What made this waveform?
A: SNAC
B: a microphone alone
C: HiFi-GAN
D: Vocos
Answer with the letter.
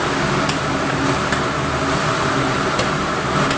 B